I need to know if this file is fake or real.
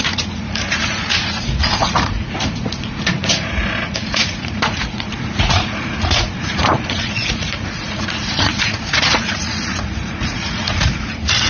fake